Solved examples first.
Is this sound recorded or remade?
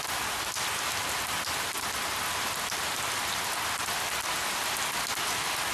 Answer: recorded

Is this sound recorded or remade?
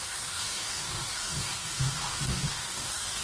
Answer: remade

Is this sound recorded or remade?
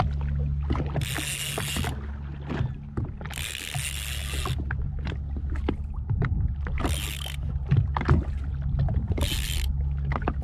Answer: recorded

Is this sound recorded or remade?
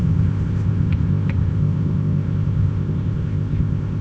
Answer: remade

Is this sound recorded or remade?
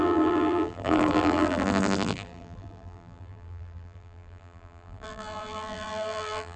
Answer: remade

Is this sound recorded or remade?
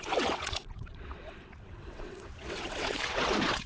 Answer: remade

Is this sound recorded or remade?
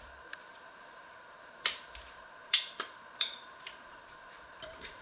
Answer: remade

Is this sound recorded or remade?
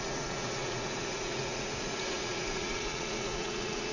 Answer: remade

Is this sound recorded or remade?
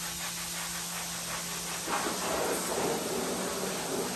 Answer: recorded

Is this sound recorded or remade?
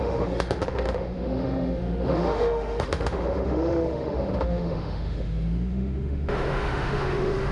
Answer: remade